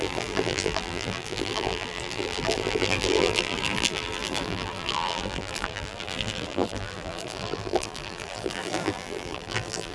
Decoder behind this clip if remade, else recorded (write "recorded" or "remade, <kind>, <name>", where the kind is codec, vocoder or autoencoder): remade, vocoder, BigVGAN v2